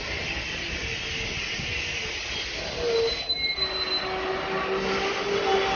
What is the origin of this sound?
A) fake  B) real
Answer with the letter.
B